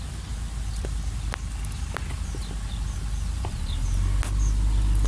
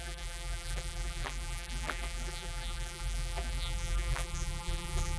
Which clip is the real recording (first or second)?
first